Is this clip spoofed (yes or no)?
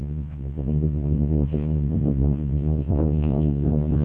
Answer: yes